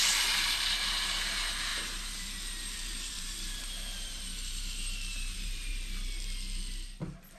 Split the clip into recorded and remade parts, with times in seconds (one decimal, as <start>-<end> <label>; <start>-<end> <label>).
0.0-5.7 remade; 5.7-7.4 recorded